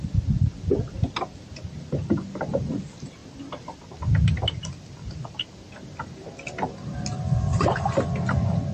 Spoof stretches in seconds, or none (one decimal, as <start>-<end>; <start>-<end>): none